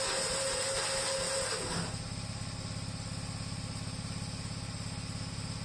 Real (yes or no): yes